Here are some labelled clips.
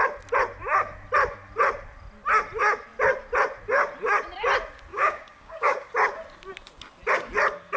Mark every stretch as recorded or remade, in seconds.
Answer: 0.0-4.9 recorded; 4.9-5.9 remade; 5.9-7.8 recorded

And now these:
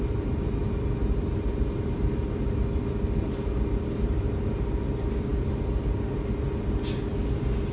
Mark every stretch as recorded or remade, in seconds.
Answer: 0.0-7.7 recorded

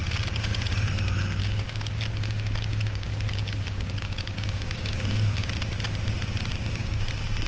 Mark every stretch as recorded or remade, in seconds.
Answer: 0.0-1.4 recorded; 1.4-5.5 remade; 5.5-6.5 recorded; 6.5-7.0 remade; 7.0-7.5 recorded